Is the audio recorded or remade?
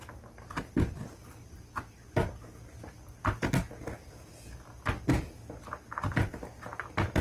recorded